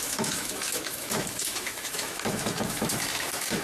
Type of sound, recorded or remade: remade